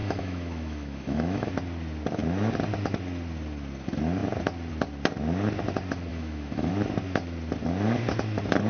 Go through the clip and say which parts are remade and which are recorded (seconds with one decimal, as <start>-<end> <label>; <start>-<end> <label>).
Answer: 0.0-1.5 remade; 1.5-6.1 recorded; 6.1-6.7 remade; 6.7-8.7 recorded